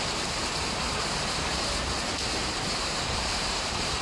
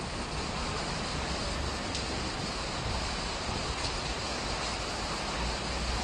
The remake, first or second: first